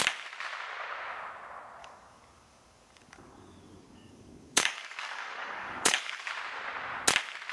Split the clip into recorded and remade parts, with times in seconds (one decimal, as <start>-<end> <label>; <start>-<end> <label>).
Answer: 0.0-1.8 recorded; 1.8-6.3 remade; 6.3-7.5 recorded